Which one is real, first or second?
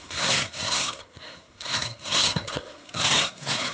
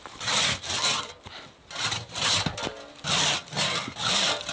second